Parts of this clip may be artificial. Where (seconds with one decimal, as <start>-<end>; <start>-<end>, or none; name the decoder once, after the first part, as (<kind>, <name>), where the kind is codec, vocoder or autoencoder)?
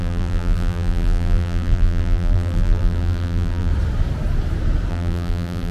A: 0.0-3.7 (vocoder, BigVGAN v2); 4.9-5.7